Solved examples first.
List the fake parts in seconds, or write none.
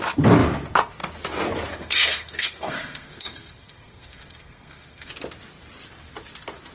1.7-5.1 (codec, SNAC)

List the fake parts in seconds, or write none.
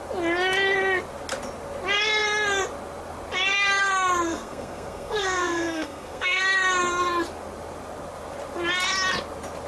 4.3-6.4 (codec, SNAC)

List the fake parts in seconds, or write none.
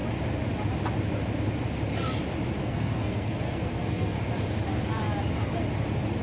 2.6-4.2 (codec, SNAC)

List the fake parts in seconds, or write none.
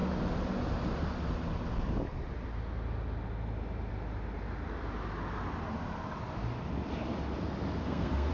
7.8-8.3 (codec, SNAC)